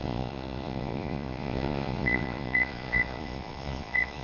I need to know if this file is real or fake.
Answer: fake